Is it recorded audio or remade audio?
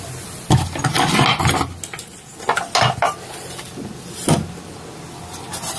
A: recorded